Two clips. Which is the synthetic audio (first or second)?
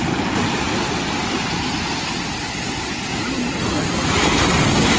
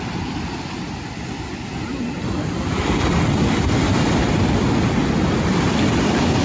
second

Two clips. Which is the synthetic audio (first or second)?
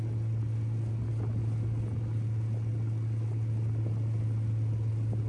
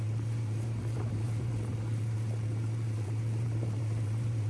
second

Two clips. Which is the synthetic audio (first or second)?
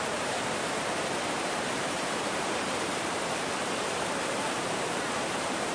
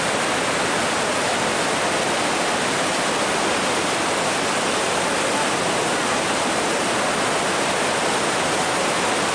first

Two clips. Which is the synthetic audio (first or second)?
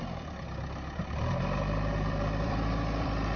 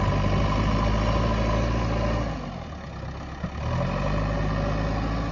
first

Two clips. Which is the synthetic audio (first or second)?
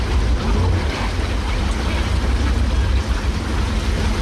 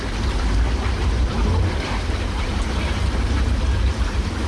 second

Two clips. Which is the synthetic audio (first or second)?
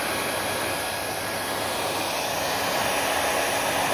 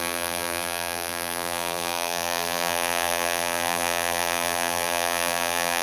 second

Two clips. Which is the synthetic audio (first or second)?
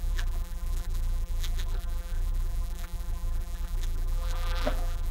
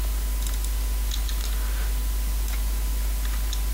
first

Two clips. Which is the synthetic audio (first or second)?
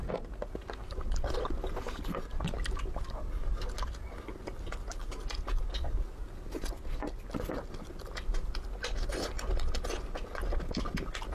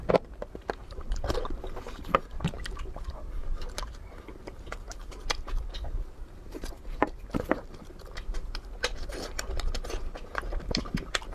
second